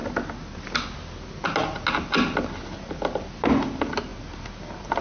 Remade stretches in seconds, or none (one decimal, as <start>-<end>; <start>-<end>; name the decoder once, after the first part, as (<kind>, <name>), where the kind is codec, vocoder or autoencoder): none